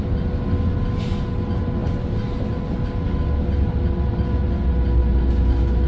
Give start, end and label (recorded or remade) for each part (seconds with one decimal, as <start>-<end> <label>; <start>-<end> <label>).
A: 0.0-5.9 recorded